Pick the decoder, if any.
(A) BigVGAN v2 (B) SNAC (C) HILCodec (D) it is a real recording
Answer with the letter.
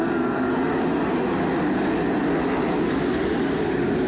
D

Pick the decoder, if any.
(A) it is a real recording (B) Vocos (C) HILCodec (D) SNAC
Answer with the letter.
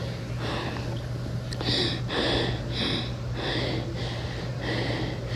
A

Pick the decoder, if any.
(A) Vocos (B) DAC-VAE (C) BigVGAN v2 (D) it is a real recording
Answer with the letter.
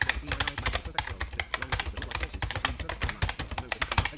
D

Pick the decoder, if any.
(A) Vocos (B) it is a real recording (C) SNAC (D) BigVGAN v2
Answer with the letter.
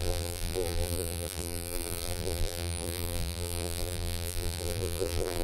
D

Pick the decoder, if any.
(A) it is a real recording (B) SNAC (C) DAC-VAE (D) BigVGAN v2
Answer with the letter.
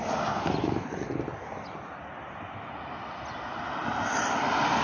A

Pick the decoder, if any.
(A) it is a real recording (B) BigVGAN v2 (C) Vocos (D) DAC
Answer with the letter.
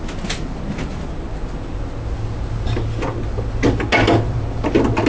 A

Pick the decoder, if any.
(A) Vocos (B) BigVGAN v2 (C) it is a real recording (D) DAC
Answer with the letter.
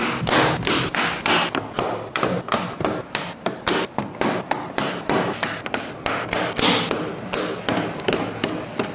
C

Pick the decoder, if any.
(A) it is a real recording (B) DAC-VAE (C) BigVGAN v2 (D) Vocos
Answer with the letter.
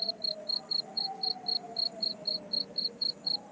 A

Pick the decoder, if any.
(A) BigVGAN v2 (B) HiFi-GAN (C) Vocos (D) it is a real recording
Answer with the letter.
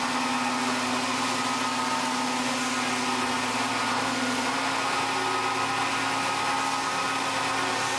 D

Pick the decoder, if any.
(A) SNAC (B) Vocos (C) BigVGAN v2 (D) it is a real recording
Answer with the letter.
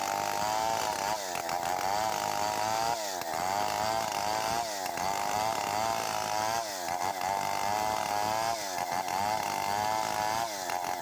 D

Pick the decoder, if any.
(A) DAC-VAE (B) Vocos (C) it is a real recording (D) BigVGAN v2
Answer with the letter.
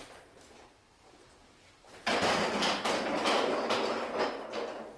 C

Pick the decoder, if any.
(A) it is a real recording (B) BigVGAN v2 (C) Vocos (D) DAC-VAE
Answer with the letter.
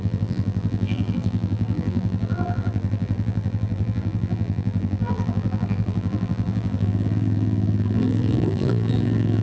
B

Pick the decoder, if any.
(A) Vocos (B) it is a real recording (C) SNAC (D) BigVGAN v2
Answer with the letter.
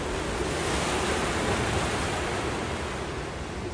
B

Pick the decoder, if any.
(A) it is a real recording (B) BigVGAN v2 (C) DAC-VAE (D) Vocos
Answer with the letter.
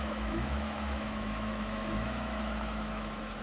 C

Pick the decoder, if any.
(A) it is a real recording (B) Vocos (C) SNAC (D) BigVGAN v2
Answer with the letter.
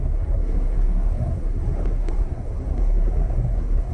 C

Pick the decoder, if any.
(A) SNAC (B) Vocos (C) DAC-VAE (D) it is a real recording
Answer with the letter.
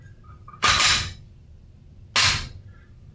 D